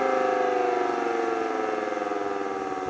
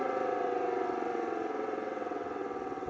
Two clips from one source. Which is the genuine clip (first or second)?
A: first